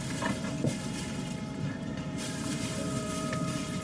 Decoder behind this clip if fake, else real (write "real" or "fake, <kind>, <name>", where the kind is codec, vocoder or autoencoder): fake, vocoder, BigVGAN v2